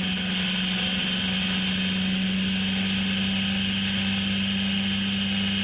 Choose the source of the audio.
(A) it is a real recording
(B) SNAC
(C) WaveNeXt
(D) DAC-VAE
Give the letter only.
A